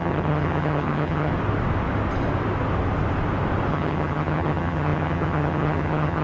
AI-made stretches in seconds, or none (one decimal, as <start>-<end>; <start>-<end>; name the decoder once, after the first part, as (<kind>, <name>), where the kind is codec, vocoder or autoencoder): 0.0-1.3 (vocoder, HiFi-GAN); 3.7-6.2